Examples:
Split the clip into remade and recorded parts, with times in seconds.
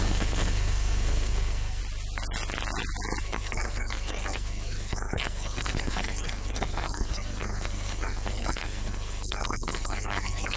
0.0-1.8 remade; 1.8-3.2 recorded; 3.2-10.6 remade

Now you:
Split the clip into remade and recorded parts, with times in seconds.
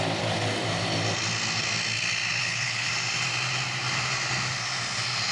0.0-2.4 recorded; 2.4-2.9 remade; 2.9-5.3 recorded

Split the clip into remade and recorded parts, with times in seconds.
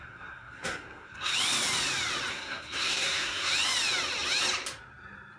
0.0-1.3 remade; 1.3-2.3 recorded; 2.3-3.5 remade; 3.5-5.4 recorded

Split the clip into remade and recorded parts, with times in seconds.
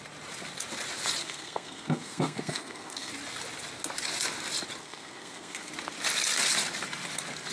0.0-1.2 recorded; 1.2-3.1 remade; 3.1-4.8 recorded; 4.8-5.7 remade; 5.7-7.5 recorded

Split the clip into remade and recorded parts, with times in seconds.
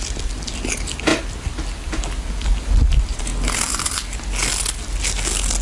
0.0-5.6 recorded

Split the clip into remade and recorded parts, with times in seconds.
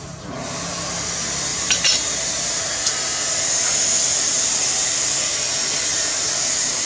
0.0-1.5 recorded; 1.5-2.6 remade; 2.6-4.1 recorded; 4.1-4.7 remade; 4.7-5.9 recorded; 5.9-6.9 remade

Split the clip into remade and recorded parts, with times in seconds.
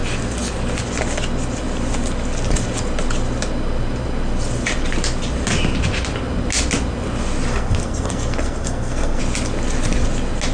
0.0-7.5 recorded; 7.5-9.2 remade; 9.2-10.5 recorded